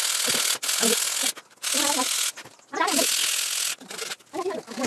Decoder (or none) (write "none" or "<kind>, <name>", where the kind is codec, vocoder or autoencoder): none